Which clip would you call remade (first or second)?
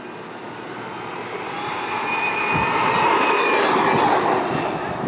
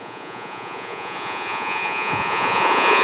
second